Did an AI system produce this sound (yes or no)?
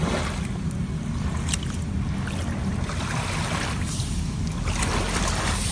no